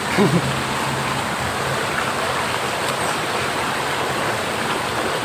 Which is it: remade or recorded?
recorded